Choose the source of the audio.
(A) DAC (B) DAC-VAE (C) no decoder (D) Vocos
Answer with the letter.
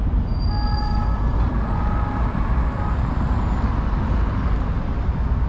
C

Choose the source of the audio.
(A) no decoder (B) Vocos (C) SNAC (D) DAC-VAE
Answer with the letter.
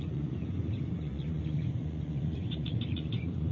B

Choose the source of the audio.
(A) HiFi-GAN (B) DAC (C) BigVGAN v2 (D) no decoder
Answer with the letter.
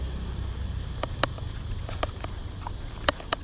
D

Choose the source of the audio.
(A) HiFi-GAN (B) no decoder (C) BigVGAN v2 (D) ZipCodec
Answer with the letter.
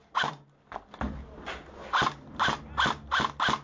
B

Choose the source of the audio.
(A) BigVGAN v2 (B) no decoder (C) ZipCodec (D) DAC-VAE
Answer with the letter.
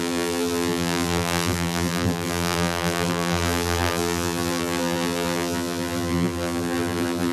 A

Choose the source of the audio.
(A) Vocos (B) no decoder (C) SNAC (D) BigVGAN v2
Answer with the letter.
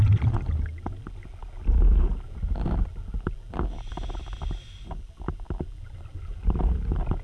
B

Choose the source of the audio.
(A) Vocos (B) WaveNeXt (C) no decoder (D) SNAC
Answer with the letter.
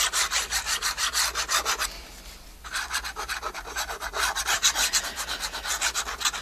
C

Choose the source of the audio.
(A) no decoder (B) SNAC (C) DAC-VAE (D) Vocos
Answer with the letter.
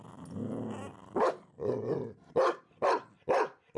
A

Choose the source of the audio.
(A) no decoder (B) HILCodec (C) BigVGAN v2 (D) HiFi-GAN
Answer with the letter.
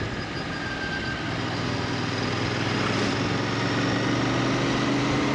A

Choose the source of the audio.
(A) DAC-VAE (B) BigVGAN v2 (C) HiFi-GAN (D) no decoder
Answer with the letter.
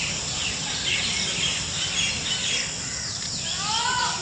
D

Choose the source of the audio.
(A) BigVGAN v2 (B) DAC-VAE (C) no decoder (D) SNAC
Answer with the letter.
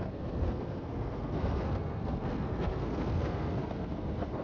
D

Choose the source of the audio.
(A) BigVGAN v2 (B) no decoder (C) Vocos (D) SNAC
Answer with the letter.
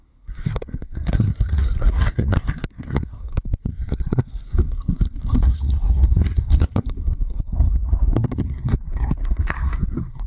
D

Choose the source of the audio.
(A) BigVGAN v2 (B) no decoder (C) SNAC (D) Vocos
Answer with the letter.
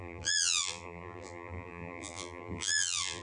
A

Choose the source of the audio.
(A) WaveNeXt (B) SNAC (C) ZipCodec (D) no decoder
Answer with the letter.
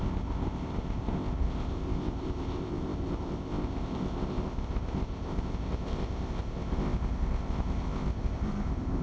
C